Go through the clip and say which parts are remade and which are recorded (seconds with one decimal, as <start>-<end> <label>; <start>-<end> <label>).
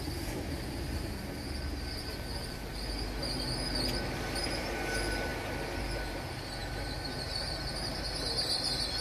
0.0-9.0 recorded